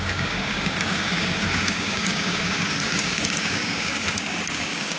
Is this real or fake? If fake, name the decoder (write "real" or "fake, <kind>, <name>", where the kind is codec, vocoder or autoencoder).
fake, codec, DAC